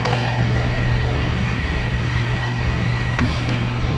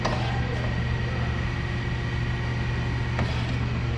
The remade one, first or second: first